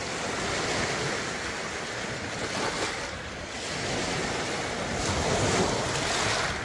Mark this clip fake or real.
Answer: real